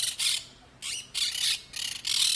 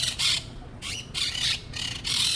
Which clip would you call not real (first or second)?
second